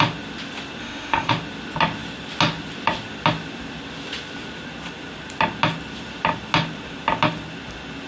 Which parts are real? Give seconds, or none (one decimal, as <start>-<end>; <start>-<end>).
0.0-0.8; 1.3-8.1

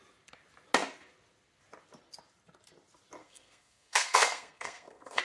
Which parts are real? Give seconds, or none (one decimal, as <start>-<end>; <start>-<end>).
0.0-3.2

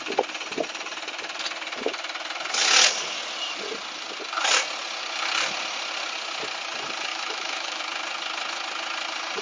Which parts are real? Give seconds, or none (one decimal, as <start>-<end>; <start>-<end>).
0.0-7.1; 7.8-9.4

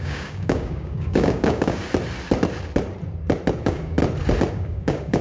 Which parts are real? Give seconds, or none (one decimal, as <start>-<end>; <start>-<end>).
1.8-3.6; 4.0-4.5

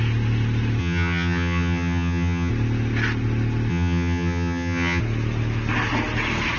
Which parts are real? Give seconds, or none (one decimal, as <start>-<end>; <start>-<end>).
0.0-0.8; 2.5-3.7; 5.0-6.6

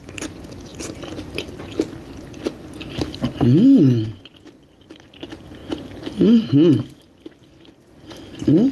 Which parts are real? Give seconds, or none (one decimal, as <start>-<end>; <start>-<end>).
0.0-8.7

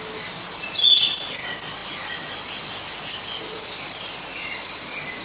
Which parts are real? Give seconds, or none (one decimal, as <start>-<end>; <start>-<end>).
0.0-5.2